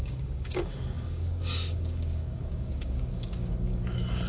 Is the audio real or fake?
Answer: fake